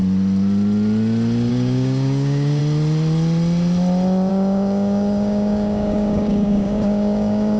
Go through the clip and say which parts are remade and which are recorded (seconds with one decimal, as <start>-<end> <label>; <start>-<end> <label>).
0.0-1.5 recorded; 1.5-2.6 remade; 2.6-4.3 recorded; 4.3-7.6 remade